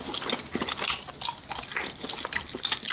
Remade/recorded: recorded